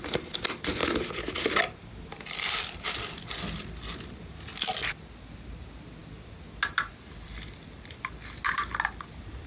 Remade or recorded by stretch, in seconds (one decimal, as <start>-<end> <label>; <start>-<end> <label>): 0.0-9.5 recorded